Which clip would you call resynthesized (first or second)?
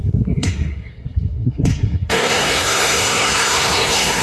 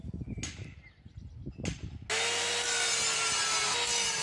first